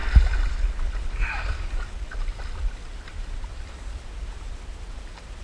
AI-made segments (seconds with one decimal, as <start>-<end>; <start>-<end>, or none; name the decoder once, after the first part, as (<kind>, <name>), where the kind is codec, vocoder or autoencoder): none